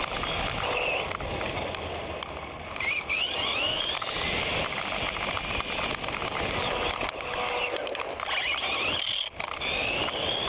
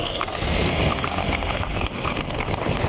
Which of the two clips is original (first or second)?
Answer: first